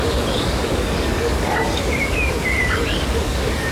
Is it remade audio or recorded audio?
remade